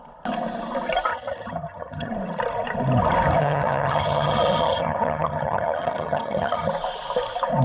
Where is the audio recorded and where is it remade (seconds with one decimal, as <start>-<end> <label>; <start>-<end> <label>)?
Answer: 0.0-1.1 recorded; 1.1-2.1 remade; 2.1-3.4 recorded; 3.4-6.7 remade; 6.7-7.6 recorded